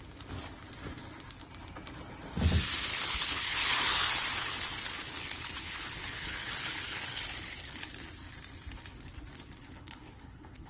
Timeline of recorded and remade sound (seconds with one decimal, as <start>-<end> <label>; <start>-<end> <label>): 0.0-2.9 recorded; 2.9-7.8 remade; 7.8-9.6 recorded; 9.6-10.7 remade